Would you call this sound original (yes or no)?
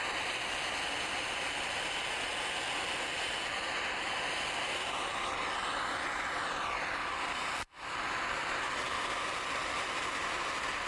yes